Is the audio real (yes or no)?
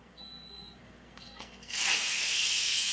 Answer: no